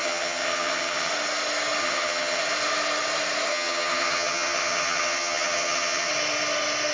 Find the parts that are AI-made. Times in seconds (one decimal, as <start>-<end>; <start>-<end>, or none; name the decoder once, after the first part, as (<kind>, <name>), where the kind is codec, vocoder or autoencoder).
0.0-1.1 (vocoder, HiFi-GAN); 1.8-2.4; 3.5-6.1